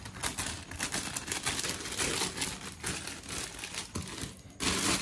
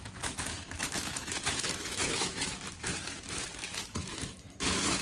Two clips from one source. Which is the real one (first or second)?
first